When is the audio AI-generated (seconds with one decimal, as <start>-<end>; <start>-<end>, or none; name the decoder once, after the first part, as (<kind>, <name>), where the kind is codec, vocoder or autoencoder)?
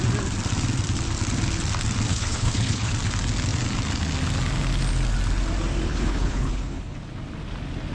2.1-2.9 (codec, HILCodec); 5.9-7.0